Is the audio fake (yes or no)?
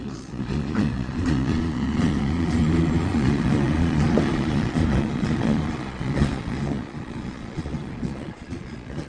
yes